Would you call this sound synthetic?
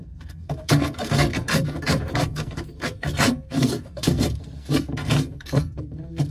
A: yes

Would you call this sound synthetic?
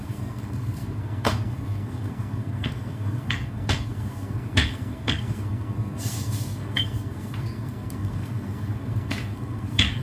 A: yes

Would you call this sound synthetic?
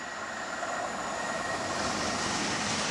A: no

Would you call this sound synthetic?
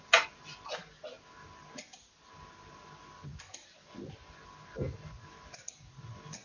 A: no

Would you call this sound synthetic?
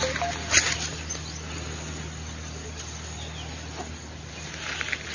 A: no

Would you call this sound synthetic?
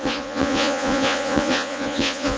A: yes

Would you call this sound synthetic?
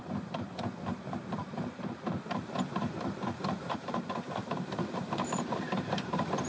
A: yes